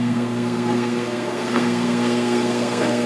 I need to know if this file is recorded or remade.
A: remade